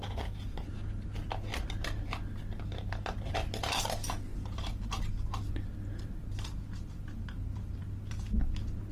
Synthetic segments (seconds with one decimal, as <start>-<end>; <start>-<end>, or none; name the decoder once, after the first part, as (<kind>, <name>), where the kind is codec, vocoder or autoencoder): none